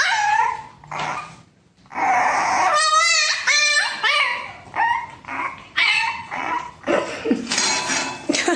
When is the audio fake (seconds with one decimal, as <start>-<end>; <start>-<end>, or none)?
5.6-6.7